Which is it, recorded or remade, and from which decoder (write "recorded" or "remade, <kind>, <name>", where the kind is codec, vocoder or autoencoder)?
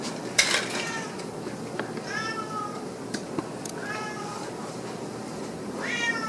remade, vocoder, BigVGAN v2